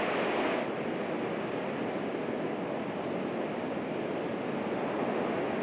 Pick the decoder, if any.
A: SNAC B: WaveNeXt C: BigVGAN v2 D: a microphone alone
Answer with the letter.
D